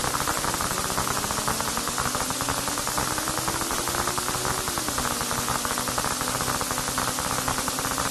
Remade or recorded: recorded